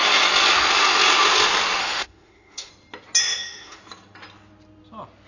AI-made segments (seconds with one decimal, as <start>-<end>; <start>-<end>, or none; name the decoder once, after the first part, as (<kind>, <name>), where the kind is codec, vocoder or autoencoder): 1.8-2.7 (autoencoder, DAC-VAE); 3.2-3.8